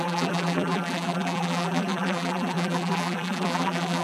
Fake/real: fake